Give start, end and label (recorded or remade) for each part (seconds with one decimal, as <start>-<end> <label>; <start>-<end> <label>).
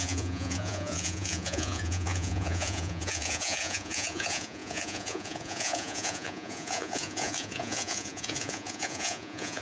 0.0-9.6 remade